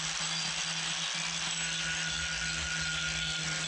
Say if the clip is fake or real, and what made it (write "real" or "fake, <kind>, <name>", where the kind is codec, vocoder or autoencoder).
real